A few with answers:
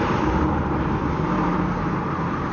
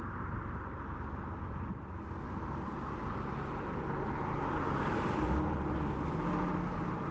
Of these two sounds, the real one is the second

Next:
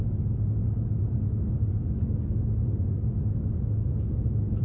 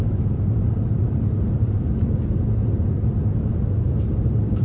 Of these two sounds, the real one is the first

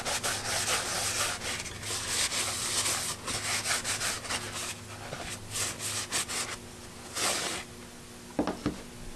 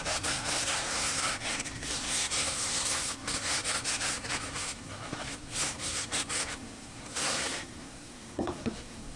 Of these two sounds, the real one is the first